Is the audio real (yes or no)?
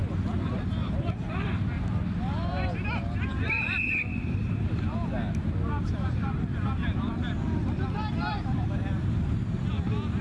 no